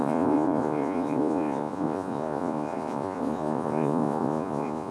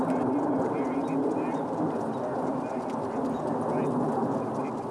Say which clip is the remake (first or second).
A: first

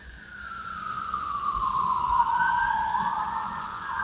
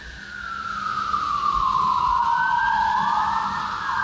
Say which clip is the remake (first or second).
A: first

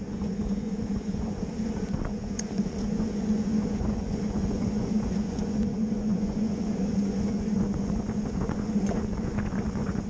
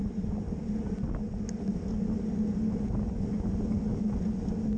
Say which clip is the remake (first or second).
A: first